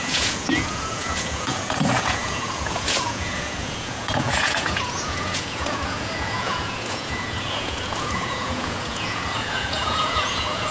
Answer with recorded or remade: remade